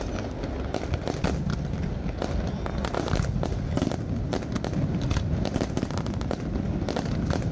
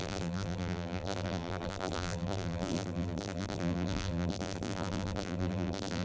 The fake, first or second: second